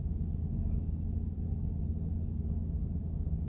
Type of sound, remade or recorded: recorded